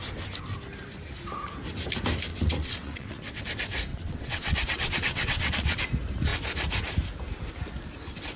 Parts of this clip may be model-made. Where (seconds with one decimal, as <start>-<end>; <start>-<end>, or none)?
2.3-3.4; 3.9-5.8